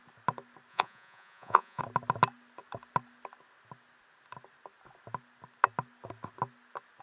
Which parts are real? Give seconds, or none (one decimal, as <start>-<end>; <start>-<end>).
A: 0.0-0.7; 1.8-7.0